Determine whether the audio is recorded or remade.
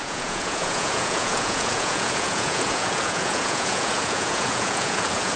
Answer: remade